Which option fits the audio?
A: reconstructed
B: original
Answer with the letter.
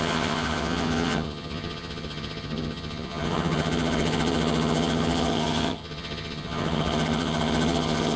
A